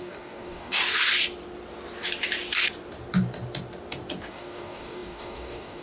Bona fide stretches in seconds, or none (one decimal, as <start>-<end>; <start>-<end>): 0.8-4.3